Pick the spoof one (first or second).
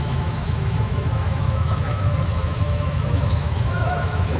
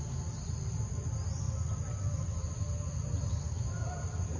first